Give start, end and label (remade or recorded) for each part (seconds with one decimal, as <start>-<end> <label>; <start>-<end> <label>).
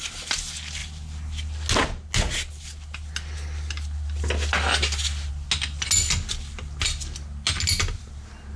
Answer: 0.0-8.6 recorded